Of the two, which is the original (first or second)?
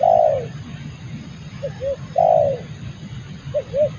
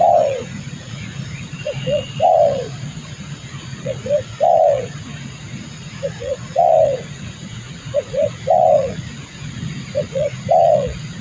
first